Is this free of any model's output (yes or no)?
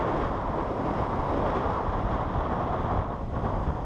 yes